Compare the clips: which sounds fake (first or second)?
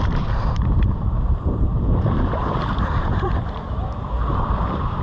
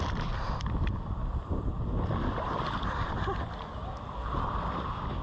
first